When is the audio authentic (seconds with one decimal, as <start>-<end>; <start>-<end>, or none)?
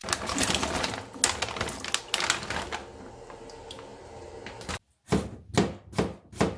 0.0-6.6